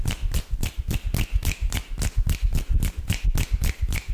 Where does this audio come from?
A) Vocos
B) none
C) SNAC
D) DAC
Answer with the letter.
B